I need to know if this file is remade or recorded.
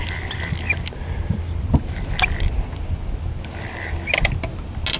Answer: recorded